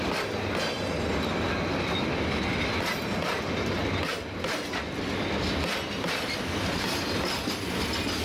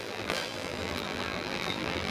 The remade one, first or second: second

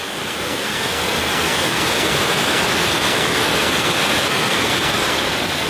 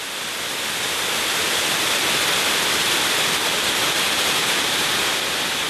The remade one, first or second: first